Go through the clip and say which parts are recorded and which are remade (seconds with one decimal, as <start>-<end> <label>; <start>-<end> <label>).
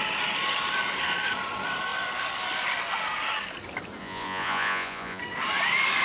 0.0-4.0 recorded; 4.0-5.2 remade; 5.2-6.0 recorded